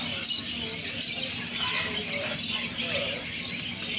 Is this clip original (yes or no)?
yes